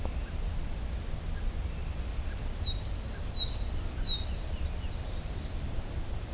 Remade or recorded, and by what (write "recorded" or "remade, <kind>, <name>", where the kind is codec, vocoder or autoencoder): recorded